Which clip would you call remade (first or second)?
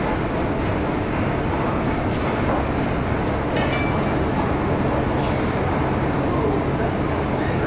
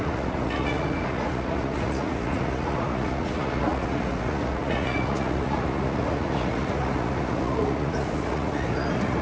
second